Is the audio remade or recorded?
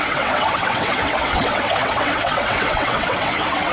remade